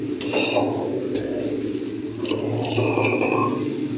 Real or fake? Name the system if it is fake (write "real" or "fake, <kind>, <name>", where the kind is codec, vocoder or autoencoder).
real